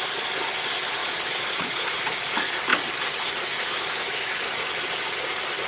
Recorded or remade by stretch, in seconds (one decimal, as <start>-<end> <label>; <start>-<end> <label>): 0.0-1.0 recorded; 1.0-2.0 remade; 2.0-5.7 recorded